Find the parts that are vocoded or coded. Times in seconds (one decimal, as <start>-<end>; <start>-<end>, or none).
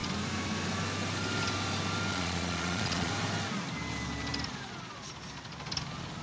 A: 2.1-3.1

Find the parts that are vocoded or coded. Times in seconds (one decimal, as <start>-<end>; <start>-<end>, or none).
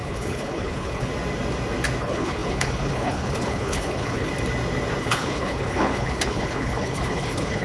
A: 0.0-1.1; 2.0-4.3; 5.0-7.6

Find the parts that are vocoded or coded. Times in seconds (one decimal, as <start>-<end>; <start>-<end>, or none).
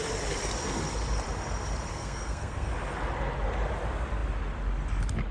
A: 1.9-2.7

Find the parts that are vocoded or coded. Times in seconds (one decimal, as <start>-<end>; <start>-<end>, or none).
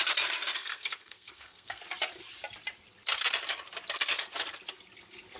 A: 0.6-1.8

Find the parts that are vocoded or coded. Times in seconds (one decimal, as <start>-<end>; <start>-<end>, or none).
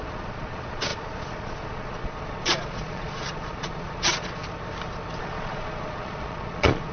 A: 0.0-4.4; 5.2-6.9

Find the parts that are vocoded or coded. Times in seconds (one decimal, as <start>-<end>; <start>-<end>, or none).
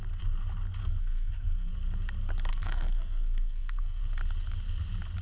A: 0.8-1.7; 2.5-4.0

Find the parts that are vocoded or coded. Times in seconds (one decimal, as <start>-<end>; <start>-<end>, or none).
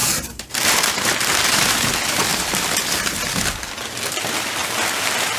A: 0.0-1.9